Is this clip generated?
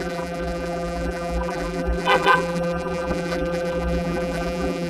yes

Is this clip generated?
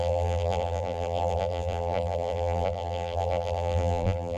yes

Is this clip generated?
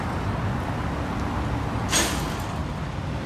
no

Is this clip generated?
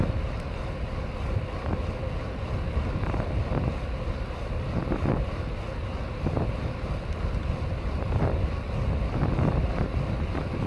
no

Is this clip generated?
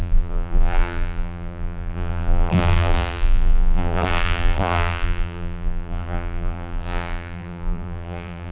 yes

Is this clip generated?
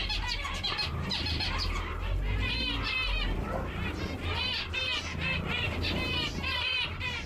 yes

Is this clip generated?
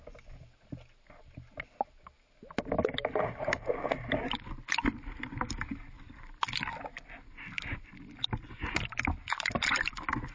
no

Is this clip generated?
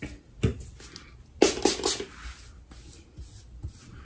no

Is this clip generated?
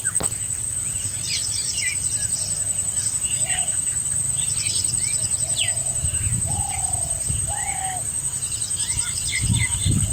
no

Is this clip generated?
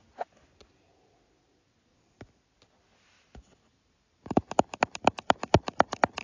no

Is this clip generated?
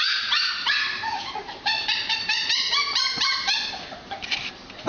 yes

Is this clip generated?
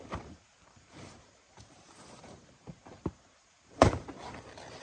yes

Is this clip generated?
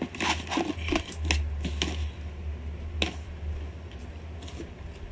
no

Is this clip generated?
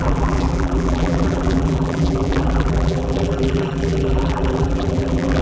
yes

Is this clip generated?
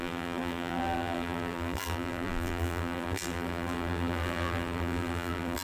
yes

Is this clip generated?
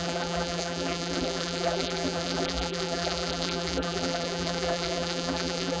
yes